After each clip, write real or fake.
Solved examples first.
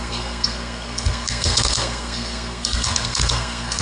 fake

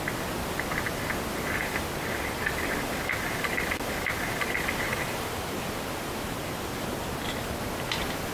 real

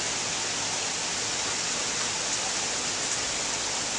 real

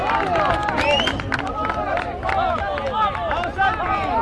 real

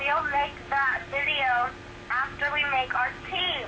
real